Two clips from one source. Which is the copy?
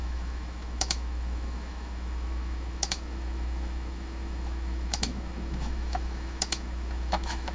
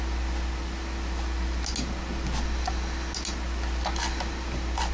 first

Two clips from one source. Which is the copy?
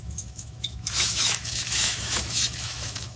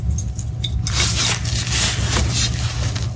first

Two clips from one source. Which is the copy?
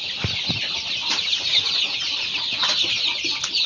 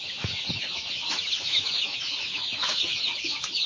second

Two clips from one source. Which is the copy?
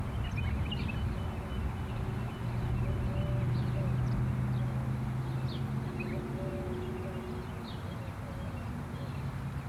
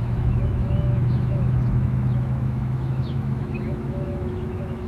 second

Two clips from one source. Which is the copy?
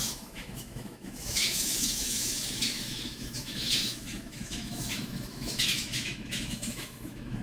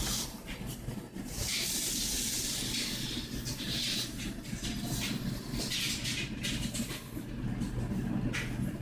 first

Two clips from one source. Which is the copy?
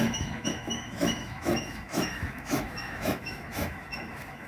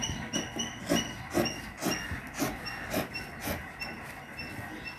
first